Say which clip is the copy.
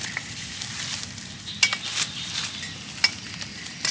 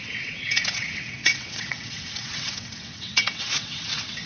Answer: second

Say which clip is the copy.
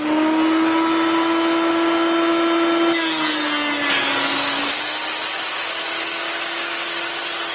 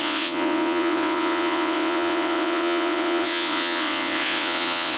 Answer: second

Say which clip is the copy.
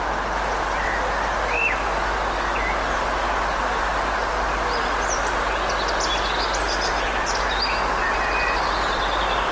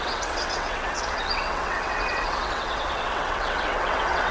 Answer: second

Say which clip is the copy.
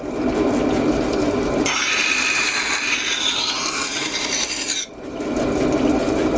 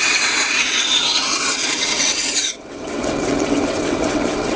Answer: second